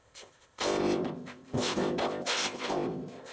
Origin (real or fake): fake